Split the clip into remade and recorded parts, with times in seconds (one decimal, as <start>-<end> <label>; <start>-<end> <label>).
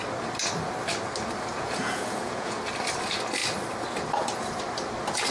0.0-1.5 recorded; 1.5-2.6 remade; 2.6-5.3 recorded